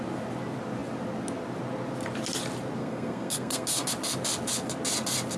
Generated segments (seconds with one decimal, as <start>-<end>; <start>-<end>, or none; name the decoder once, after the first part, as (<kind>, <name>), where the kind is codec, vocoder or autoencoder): 2.8-3.9 (codec, SNAC)